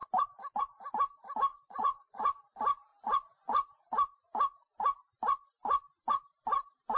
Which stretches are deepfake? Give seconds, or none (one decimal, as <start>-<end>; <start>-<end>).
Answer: 1.5-2.2